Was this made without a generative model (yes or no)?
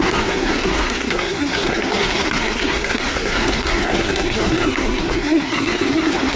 no